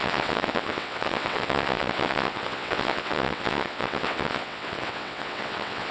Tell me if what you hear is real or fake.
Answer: fake